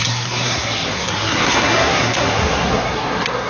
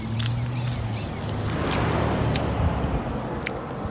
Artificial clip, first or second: first